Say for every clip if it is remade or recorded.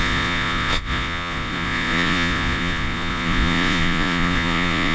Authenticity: remade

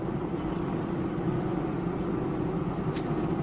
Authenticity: recorded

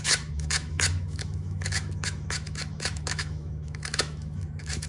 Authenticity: remade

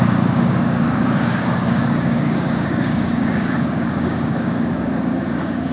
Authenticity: remade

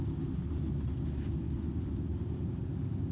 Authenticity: recorded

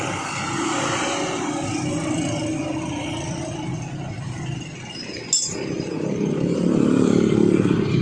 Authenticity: recorded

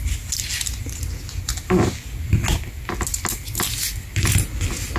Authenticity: recorded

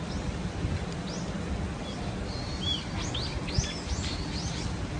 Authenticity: recorded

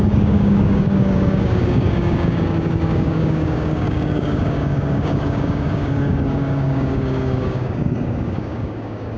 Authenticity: remade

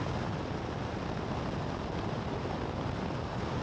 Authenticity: recorded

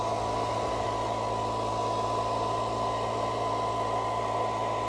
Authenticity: recorded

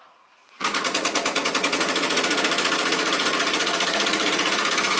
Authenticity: remade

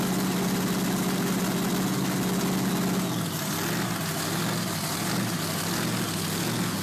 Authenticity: recorded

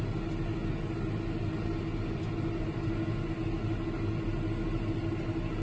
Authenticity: recorded